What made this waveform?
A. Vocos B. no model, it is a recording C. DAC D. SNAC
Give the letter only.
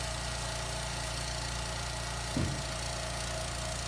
B